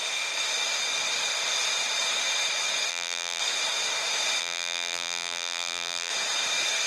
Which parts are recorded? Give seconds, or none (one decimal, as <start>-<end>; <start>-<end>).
0.0-2.9; 3.4-4.4; 6.1-6.9